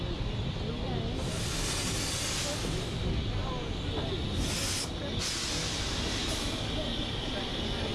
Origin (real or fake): real